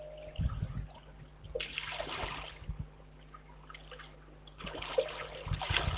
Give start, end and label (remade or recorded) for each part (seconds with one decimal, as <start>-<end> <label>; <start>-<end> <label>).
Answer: 0.0-6.0 recorded